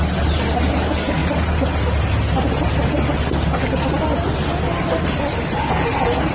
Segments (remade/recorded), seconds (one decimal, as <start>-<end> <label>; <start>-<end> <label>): 0.0-6.3 recorded